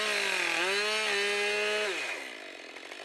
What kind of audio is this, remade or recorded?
recorded